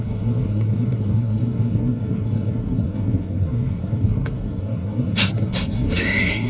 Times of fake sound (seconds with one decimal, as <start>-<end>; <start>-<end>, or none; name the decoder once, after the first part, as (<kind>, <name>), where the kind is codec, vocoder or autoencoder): 0.0-6.5 (codec, SNAC)